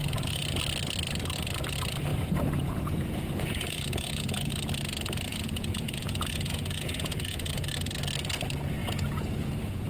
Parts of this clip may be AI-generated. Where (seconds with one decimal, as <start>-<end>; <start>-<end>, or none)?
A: 0.0-0.6; 2.1-4.5; 5.3-7.5; 8.8-9.9